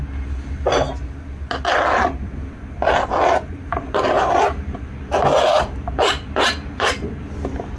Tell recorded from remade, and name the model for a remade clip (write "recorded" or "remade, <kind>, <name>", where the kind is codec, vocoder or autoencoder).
recorded